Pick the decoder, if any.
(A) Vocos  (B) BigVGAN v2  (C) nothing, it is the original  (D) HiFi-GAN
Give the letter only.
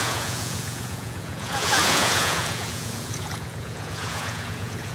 A